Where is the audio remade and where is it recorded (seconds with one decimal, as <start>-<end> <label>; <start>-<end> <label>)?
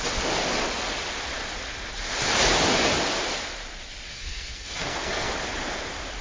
0.0-4.1 recorded; 4.1-5.3 remade; 5.3-6.2 recorded